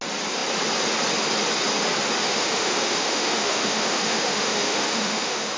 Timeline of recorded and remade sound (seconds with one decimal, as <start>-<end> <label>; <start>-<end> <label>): 0.0-2.2 recorded; 2.2-5.6 remade

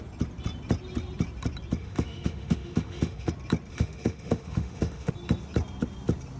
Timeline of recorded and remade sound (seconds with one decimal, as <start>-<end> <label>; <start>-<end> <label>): 0.0-1.8 recorded; 1.8-3.3 remade; 3.3-3.7 recorded; 3.7-5.1 remade; 5.1-6.4 recorded

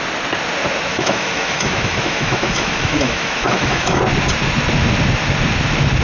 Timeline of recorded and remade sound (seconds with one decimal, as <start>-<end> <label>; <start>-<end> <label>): 0.0-0.9 recorded; 0.9-4.0 remade; 4.0-6.0 recorded

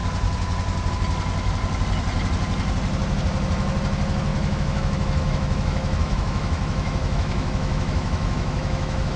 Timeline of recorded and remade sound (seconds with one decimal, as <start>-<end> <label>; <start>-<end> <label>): 0.0-4.3 recorded; 4.3-9.2 remade

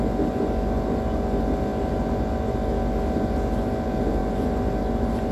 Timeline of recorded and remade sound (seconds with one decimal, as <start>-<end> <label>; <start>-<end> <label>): 0.0-5.3 recorded

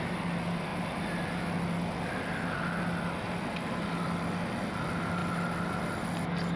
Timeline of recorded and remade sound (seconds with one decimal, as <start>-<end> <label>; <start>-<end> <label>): 0.0-6.6 recorded

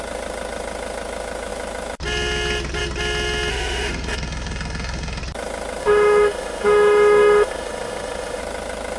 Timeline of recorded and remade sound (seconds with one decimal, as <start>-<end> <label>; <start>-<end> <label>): 0.0-3.5 recorded; 3.5-5.2 remade; 5.2-5.8 recorded; 5.8-8.4 remade; 8.4-9.0 recorded

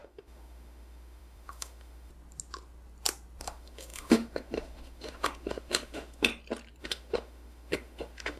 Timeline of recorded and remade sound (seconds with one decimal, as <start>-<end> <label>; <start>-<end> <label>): 0.0-2.1 remade; 2.1-3.4 recorded; 3.4-6.3 remade; 6.3-6.8 recorded; 6.8-8.4 remade